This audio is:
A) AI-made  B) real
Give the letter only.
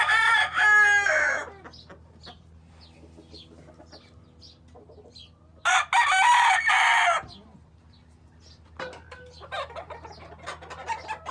B